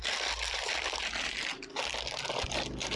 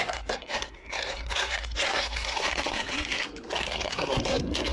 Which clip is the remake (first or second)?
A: second